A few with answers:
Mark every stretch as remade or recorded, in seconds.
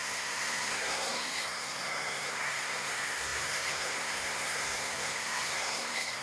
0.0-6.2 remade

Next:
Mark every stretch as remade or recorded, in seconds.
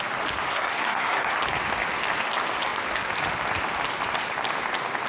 0.0-0.5 recorded; 0.5-1.3 remade; 1.3-5.1 recorded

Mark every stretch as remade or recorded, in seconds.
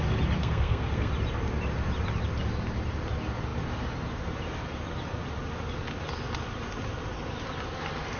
0.0-0.4 recorded; 0.4-1.1 remade; 1.1-8.2 recorded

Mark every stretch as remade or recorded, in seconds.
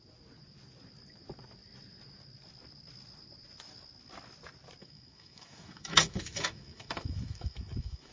0.0-4.8 recorded; 4.8-8.1 remade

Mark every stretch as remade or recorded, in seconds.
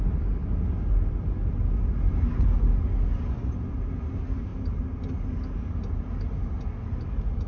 0.0-7.5 recorded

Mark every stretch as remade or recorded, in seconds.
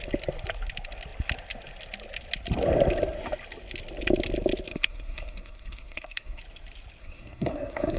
0.0-4.7 recorded; 4.7-6.4 remade; 6.4-7.0 recorded; 7.0-8.0 remade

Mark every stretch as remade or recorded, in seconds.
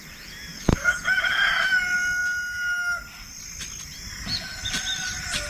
0.0-0.5 recorded; 0.5-1.5 remade; 1.5-5.5 recorded